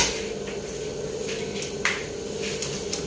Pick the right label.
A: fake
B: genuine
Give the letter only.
B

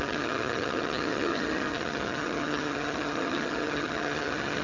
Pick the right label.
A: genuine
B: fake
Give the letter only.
B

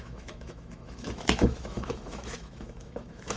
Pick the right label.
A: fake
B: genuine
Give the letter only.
A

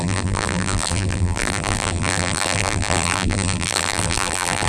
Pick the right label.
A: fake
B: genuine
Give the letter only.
A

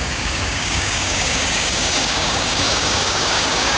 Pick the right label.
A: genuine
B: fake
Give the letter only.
B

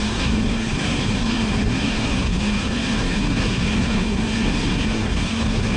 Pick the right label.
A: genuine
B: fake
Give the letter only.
B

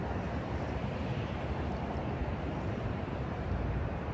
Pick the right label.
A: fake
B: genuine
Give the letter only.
A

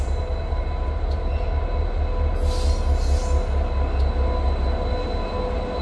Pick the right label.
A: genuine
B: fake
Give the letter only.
A